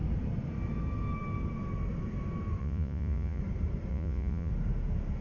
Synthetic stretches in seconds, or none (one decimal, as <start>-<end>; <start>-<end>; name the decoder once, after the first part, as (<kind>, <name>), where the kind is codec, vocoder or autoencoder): 2.6-3.4 (vocoder, Vocos); 3.9-4.5